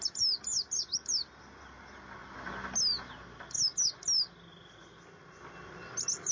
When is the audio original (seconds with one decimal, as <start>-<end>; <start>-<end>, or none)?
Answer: 0.0-6.3